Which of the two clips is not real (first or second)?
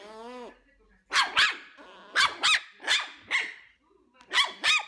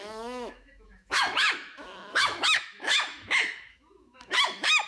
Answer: second